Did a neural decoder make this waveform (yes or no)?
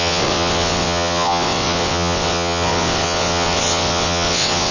yes